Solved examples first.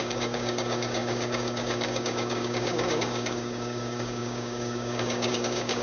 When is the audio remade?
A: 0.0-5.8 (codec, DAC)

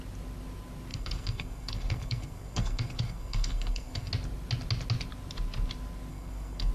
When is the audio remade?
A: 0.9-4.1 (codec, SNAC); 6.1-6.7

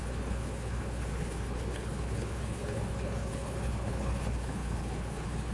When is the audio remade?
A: 0.0-5.5 (codec, HILCodec)

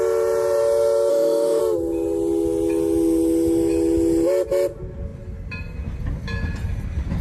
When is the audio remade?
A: 1.1-1.6 (autoencoder, DAC-VAE)